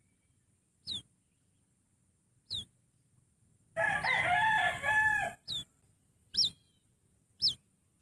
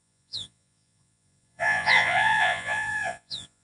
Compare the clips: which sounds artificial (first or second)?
second